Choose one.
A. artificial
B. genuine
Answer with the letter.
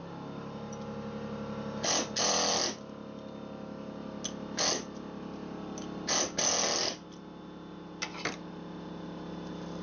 B